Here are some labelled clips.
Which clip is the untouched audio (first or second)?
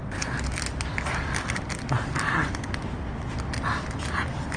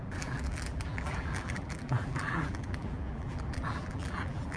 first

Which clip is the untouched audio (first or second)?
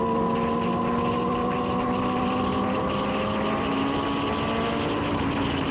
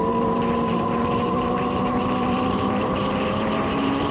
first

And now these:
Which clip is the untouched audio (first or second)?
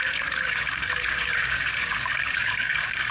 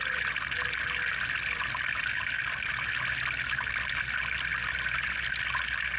second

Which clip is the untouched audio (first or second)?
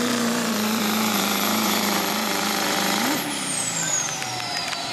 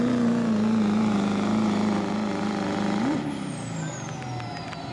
second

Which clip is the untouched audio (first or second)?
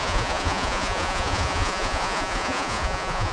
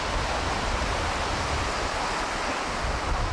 second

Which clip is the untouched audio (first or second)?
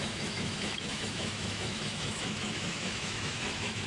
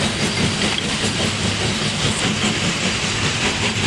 second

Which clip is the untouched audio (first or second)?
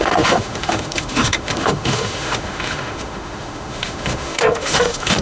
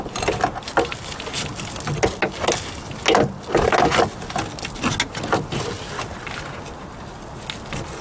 second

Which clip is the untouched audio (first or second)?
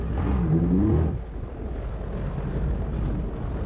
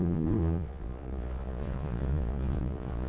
first